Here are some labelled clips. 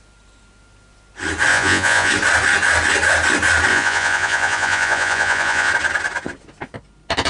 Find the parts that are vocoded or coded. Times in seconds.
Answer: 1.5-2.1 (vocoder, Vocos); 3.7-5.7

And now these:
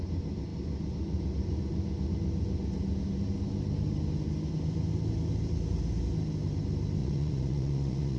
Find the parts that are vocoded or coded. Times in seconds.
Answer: 7.0-8.2 (vocoder, Vocos)

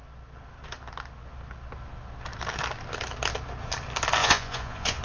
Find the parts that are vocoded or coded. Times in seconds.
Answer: 4.2-5.0 (vocoder, Vocos)